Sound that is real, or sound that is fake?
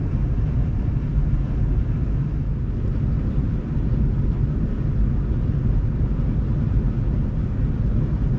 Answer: real